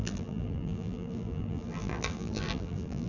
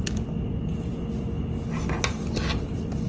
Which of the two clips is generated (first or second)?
first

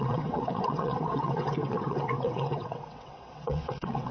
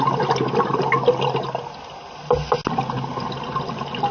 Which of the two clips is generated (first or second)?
first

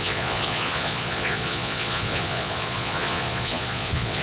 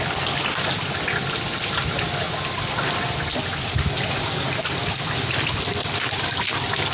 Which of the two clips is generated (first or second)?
first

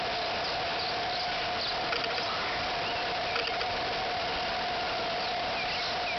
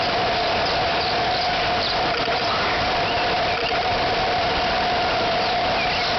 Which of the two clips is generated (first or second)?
second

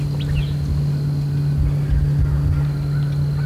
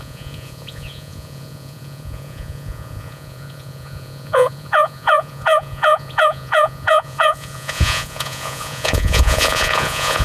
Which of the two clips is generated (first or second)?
second